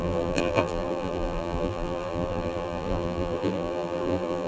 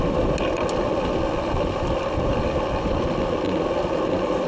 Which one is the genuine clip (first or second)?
second